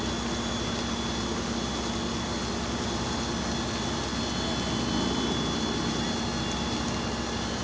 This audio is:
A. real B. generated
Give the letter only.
A